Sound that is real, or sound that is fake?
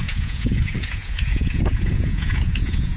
fake